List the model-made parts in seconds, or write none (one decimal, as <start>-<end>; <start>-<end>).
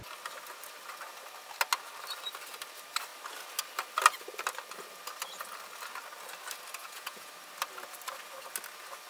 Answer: 6.8-7.3